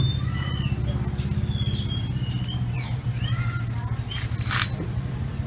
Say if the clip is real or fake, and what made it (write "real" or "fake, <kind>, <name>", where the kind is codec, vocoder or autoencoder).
real